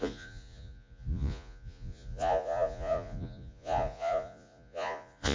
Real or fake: fake